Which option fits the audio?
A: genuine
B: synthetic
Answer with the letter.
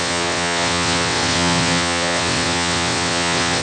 B